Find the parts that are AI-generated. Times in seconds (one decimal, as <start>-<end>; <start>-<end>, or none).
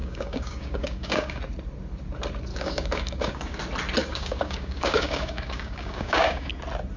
0.0-1.4; 2.5-3.6; 4.0-6.5